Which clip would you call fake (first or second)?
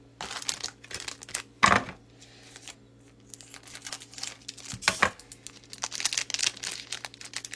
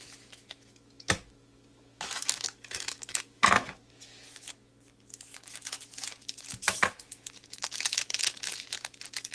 second